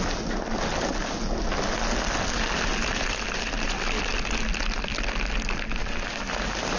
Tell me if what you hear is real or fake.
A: real